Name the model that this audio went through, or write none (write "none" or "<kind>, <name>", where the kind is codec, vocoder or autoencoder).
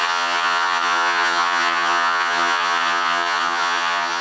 vocoder, HiFi-GAN